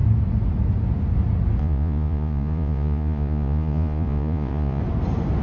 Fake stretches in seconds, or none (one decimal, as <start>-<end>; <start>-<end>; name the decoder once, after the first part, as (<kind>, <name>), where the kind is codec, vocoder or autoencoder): 1.6-4.8 (vocoder, Vocos)